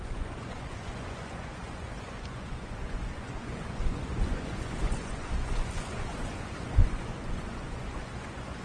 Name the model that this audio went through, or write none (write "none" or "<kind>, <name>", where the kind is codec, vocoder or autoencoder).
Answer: vocoder, Vocos